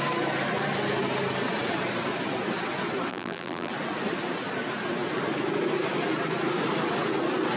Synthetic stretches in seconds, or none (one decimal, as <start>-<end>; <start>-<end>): 3.1-3.7